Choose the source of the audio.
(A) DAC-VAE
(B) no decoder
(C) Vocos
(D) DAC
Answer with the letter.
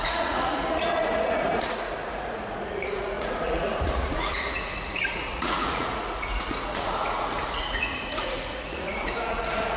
C